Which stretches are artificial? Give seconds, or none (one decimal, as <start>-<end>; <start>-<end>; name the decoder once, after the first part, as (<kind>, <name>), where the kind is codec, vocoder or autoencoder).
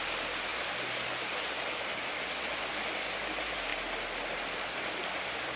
none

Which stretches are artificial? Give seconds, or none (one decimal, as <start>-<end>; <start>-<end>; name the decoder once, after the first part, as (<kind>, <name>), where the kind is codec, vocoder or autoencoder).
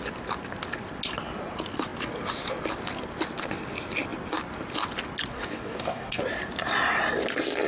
5.3-6.2 (codec, DAC)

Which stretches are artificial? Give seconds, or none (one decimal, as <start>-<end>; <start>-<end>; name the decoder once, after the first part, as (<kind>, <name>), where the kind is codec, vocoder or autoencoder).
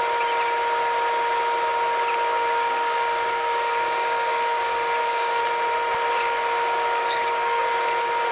2.3-5.4 (codec, DAC); 6.1-7.6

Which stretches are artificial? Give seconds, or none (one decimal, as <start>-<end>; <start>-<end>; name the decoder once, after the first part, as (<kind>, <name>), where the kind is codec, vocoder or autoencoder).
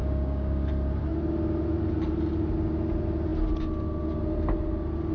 0.0-0.7 (codec, DAC)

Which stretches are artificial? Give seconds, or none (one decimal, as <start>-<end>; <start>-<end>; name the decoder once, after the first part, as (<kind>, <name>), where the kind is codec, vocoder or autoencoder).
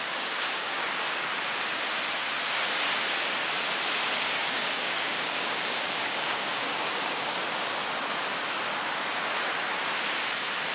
0.0-0.8 (codec, DAC); 4.4-7.3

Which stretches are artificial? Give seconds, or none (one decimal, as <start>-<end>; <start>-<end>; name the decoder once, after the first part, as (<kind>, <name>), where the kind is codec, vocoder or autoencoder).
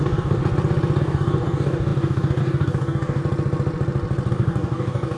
0.0-0.4 (codec, DAC); 1.0-3.2; 4.3-5.2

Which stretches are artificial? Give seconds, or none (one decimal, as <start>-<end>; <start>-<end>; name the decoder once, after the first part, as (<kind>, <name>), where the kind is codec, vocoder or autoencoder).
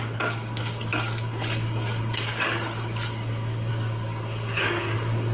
0.0-5.3 (codec, DAC)